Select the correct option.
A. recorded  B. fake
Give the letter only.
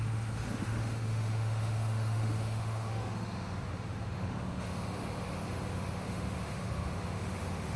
B